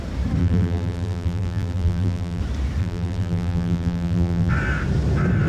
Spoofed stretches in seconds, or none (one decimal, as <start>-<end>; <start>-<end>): 0.4-2.4; 2.8-4.5